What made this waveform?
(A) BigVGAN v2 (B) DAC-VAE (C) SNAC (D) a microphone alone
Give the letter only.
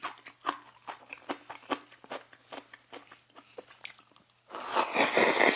D